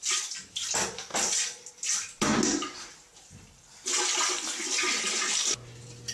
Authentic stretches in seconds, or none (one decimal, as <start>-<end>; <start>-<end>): 0.0-6.1